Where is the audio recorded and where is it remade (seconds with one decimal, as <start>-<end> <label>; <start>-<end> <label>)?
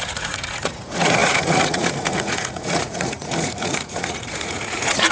0.0-5.1 remade